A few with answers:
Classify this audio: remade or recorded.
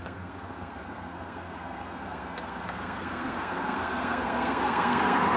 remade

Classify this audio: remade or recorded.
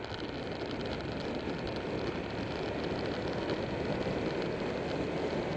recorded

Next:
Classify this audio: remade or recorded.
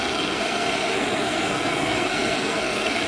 remade